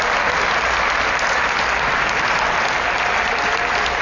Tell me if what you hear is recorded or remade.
recorded